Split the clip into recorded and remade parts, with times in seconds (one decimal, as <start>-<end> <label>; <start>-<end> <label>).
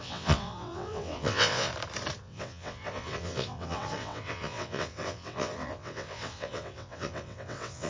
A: 0.0-1.7 remade; 1.7-2.2 recorded; 2.2-7.9 remade